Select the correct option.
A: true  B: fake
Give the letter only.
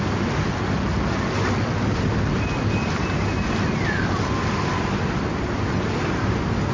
A